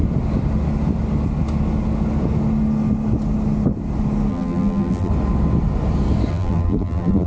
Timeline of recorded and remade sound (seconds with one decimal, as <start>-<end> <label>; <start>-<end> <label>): 0.0-4.3 recorded; 4.3-5.1 remade; 5.1-6.3 recorded; 6.3-7.3 remade